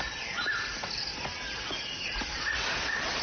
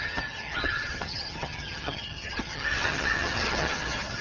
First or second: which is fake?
second